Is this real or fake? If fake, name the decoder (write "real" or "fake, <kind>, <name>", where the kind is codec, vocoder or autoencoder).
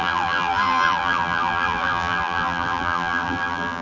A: fake, vocoder, BigVGAN v2